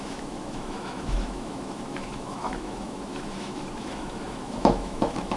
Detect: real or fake fake